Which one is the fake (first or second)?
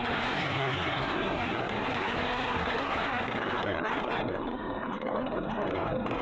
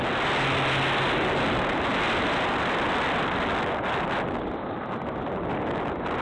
first